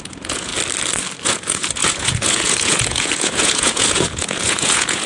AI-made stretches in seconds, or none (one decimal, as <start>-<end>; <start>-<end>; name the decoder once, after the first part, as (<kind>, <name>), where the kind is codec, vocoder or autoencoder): 0.0-0.5 (vocoder, Vocos); 1.2-5.1